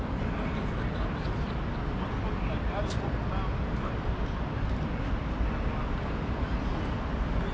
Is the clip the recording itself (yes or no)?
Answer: yes